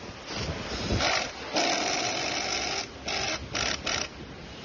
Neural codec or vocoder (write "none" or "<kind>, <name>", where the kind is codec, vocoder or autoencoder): none